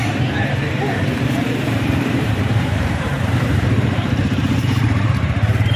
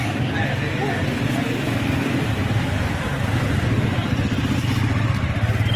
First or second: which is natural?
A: second